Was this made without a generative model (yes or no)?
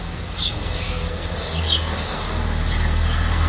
no